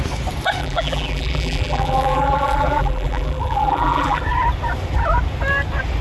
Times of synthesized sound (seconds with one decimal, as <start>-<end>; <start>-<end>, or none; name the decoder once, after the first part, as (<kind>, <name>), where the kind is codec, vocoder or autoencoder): 0.6-4.2 (vocoder, BigVGAN v2)